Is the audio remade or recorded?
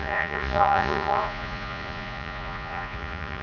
remade